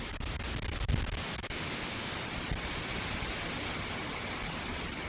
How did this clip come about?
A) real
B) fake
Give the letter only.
A